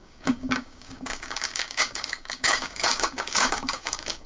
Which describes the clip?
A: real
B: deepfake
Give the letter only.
B